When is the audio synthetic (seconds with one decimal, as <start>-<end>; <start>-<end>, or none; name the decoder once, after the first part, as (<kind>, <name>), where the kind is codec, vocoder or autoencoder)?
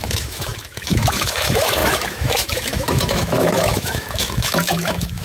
0.0-5.2 (autoencoder, DAC-VAE)